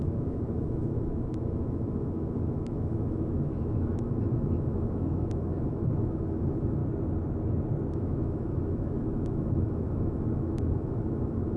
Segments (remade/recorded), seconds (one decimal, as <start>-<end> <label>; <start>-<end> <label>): 0.0-6.8 remade; 6.8-7.9 recorded; 7.9-11.6 remade